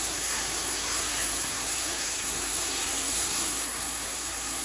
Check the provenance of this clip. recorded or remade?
remade